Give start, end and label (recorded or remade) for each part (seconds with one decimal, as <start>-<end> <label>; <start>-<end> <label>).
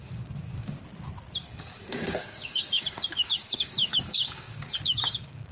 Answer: 0.0-0.8 remade; 0.8-1.4 recorded; 1.4-5.5 remade